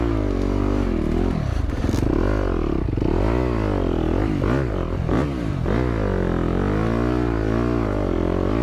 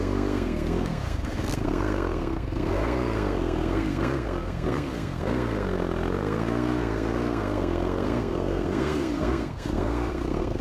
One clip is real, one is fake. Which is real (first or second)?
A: first